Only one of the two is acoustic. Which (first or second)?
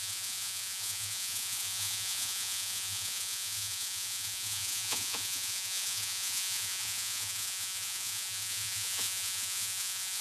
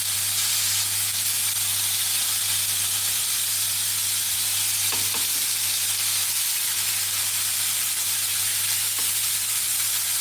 second